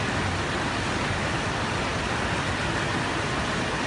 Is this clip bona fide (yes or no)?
yes